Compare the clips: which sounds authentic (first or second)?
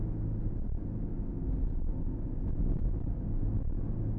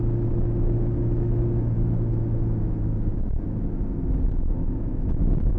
first